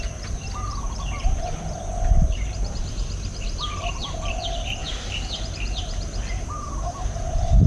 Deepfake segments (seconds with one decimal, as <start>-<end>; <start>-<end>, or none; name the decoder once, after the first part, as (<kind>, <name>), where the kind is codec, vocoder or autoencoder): 0.0-7.7 (vocoder, BigVGAN v2)